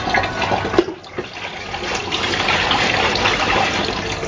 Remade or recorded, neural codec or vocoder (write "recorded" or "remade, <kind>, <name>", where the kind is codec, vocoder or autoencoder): recorded